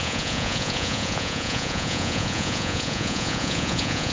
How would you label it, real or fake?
fake